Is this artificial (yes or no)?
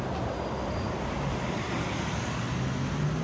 no